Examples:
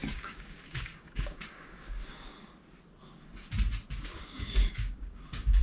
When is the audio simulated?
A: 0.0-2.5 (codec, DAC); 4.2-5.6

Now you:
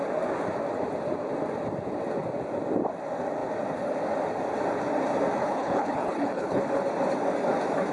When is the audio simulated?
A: 5.4-6.6 (codec, HILCodec)

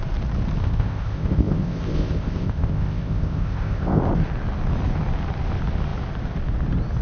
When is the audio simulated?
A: 0.6-4.0 (codec, ZipCodec)

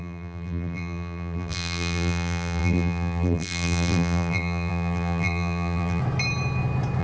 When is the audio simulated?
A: 0.0-6.0 (vocoder, BigVGAN v2)

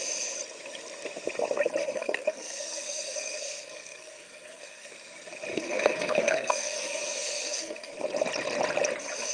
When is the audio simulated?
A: 1.8-4.9 (codec, SNAC); 5.5-7.9

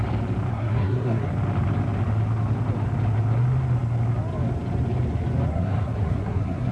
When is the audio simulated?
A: 0.5-1.3 (codec, SNAC); 5.5-6.7

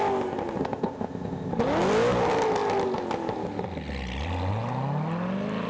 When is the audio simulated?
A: 0.6-1.5 (codec, ZipCodec)